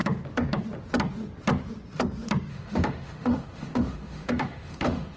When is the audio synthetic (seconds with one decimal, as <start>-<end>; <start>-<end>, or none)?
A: 2.5-5.2